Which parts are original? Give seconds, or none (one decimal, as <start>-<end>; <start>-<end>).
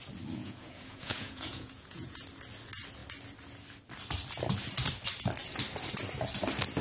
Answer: 0.0-0.4; 2.2-6.8